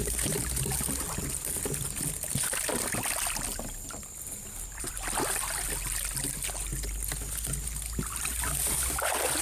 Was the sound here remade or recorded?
recorded